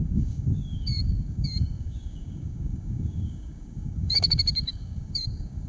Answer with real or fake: fake